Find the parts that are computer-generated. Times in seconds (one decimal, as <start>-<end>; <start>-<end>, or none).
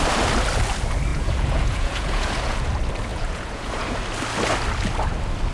1.1-2.7; 3.1-3.9